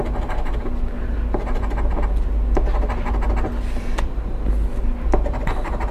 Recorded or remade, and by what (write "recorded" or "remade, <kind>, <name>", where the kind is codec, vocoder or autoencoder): recorded